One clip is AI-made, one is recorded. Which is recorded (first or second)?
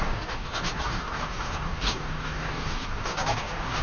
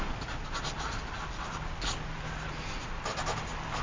second